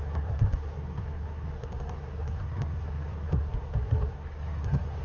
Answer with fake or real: fake